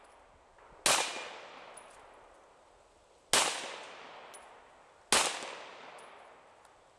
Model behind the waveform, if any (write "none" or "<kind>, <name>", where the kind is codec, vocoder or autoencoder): none